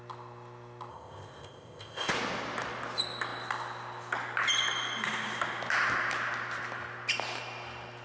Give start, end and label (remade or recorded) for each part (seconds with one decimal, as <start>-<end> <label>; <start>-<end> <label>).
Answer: 0.0-0.9 recorded; 0.9-2.1 remade; 2.1-8.0 recorded

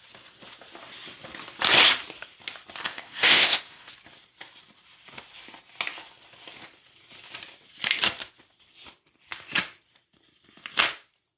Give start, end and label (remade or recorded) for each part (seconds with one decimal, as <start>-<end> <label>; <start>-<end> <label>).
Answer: 0.0-2.8 recorded; 2.8-3.9 remade; 3.9-11.4 recorded

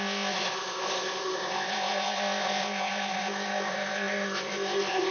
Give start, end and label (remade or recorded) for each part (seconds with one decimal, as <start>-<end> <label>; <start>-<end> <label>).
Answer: 0.0-5.1 remade